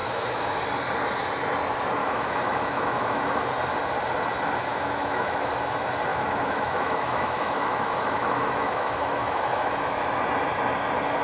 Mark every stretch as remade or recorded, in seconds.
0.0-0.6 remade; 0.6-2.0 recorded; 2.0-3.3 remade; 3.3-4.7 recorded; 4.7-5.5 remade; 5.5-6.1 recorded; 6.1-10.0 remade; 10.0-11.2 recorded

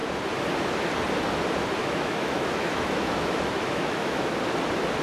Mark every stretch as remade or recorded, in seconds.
0.0-1.8 recorded; 1.8-4.3 remade; 4.3-5.0 recorded

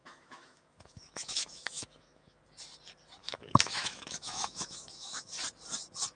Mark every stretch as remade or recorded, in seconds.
0.0-2.4 remade; 2.4-3.2 recorded; 3.2-5.3 remade; 5.3-6.1 recorded

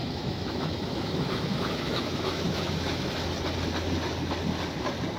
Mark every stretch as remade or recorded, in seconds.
0.0-3.1 remade; 3.1-5.2 recorded

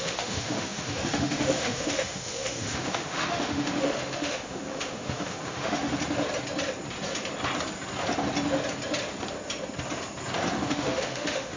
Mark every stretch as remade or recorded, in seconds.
0.0-5.8 remade; 5.8-10.7 recorded; 10.7-11.6 remade

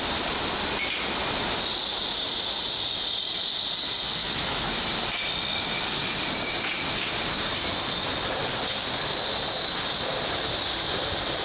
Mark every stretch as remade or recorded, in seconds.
0.0-4.2 recorded; 4.2-4.7 remade; 4.7-11.4 recorded

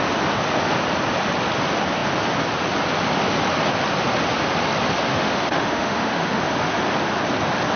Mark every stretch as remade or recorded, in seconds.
0.0-5.1 recorded; 5.1-6.4 remade; 6.4-7.8 recorded